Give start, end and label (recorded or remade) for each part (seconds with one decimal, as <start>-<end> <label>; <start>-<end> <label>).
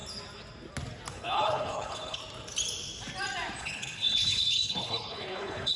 0.0-1.1 recorded; 1.1-2.2 remade; 2.2-3.6 recorded; 3.6-5.8 remade